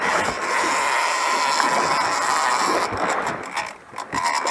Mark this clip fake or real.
real